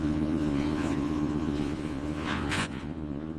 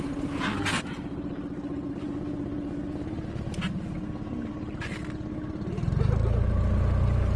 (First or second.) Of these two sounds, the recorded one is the second